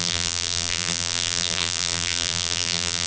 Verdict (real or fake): fake